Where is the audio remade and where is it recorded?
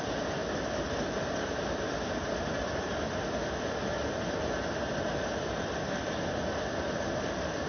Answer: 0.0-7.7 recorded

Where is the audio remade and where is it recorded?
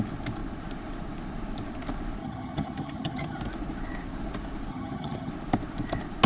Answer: 0.0-2.2 recorded; 2.2-3.4 remade; 3.4-4.7 recorded; 4.7-5.3 remade; 5.3-6.3 recorded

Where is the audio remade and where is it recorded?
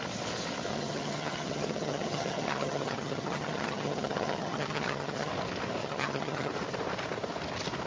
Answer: 0.0-0.7 recorded; 0.7-5.3 remade; 5.3-5.8 recorded; 5.8-6.5 remade; 6.5-7.9 recorded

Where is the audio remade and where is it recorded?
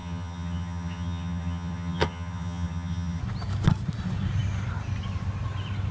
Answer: 0.0-3.2 remade; 3.2-5.9 recorded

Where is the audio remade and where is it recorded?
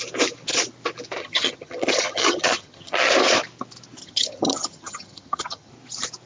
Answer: 0.0-1.2 recorded; 1.2-3.1 remade; 3.1-4.0 recorded; 4.0-5.7 remade; 5.7-6.3 recorded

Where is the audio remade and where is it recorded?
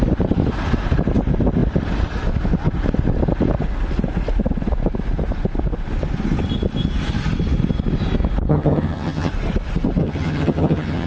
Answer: 0.0-8.5 recorded; 8.5-9.3 remade; 9.3-10.0 recorded; 10.0-11.1 remade